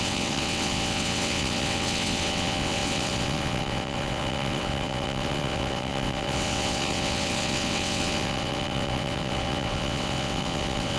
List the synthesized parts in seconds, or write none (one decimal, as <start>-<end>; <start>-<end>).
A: 0.0-11.0